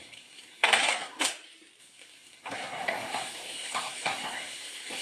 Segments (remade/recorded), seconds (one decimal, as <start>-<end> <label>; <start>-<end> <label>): 0.0-1.3 remade; 1.3-1.8 recorded; 1.8-5.0 remade